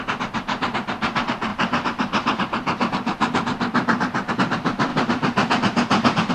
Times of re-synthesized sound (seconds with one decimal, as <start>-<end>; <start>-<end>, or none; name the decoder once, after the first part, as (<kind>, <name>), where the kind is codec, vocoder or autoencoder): 1.5-4.3 (vocoder, BigVGAN v2); 4.9-6.3